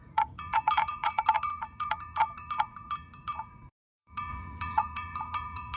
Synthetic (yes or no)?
yes